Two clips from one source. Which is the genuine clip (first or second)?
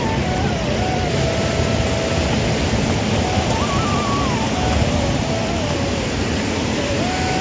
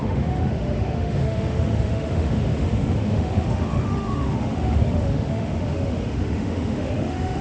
first